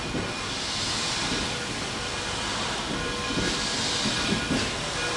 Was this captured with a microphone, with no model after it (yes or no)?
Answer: yes